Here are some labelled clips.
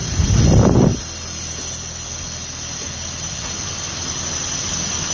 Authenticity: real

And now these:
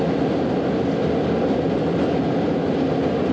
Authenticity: real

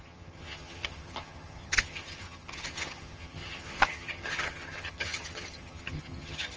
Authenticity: fake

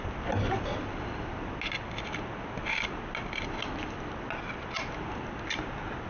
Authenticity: real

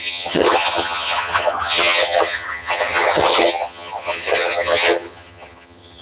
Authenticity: fake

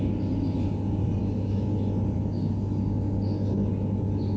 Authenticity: real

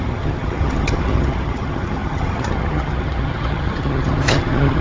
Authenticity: fake